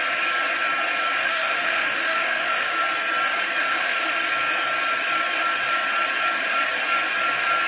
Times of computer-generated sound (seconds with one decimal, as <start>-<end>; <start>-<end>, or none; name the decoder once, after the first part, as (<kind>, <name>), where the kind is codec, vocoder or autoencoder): 1.2-2.8 (autoencoder, DAC-VAE); 3.6-4.2